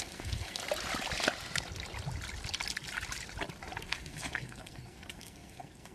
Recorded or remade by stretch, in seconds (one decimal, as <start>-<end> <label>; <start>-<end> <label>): 0.0-0.6 remade; 0.6-3.8 recorded; 3.8-5.9 remade